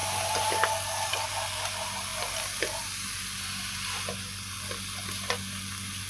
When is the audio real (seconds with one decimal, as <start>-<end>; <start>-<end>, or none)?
0.0-6.1